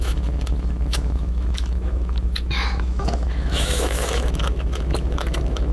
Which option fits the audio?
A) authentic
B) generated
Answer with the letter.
B